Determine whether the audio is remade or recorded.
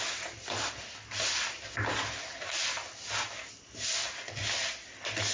recorded